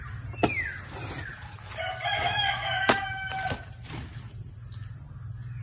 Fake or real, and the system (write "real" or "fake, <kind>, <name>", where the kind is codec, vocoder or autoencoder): real